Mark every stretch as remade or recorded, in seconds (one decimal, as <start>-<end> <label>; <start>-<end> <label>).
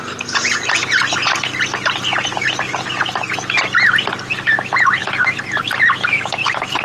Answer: 0.0-6.8 recorded